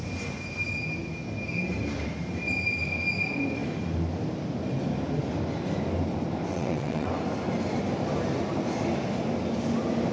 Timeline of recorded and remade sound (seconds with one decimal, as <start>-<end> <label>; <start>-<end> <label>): 0.0-6.5 recorded; 6.5-7.1 remade; 7.1-10.1 recorded